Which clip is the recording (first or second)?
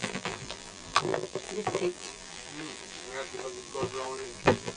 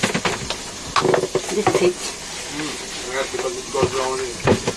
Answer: second